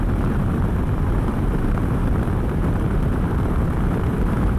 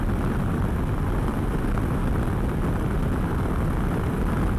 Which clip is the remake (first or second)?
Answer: first